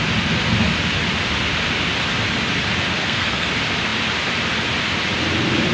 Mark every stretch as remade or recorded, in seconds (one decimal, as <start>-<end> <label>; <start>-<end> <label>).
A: 0.0-3.0 recorded; 3.0-3.5 remade; 3.5-5.7 recorded

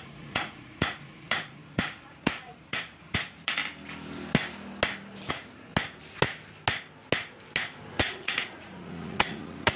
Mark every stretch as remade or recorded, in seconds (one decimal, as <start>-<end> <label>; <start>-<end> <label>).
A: 0.0-3.6 remade; 3.6-5.3 recorded; 5.3-5.7 remade; 5.7-8.0 recorded; 8.0-9.8 remade

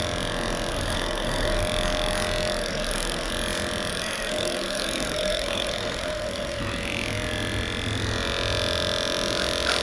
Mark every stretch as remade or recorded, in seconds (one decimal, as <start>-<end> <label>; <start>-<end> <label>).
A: 0.0-0.7 recorded; 0.7-1.6 remade; 1.6-2.6 recorded; 2.6-3.3 remade; 3.3-3.9 recorded; 3.9-6.6 remade; 6.6-9.8 recorded

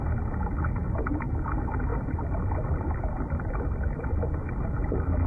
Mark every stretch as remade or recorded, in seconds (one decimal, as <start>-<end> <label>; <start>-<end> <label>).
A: 0.0-1.9 recorded; 1.9-4.5 remade; 4.5-5.3 recorded

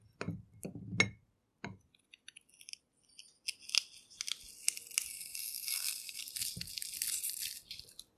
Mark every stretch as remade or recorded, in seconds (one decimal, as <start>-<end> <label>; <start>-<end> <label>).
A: 0.0-5.1 recorded; 5.1-6.2 remade; 6.2-8.2 recorded

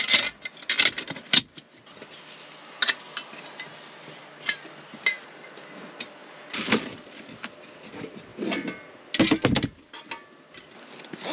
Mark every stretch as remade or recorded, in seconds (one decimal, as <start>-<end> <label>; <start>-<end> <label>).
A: 0.0-11.3 recorded

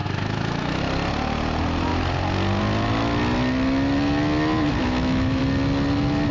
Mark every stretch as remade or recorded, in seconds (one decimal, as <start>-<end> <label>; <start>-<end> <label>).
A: 0.0-0.8 remade; 0.8-4.8 recorded; 4.8-5.4 remade; 5.4-6.3 recorded

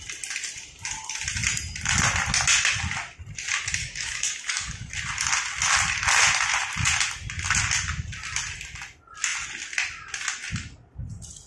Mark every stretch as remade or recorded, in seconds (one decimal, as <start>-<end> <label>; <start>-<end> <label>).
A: 0.0-3.8 recorded; 3.8-4.9 remade; 4.9-11.5 recorded